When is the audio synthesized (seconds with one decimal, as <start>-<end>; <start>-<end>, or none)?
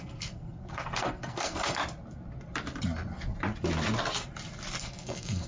0.0-1.8; 4.8-5.5